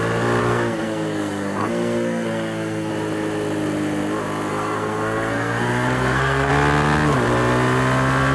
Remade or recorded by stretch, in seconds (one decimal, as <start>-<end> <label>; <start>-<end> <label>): 0.0-0.4 recorded; 0.4-2.9 remade; 2.9-4.5 recorded; 4.5-6.5 remade; 6.5-8.3 recorded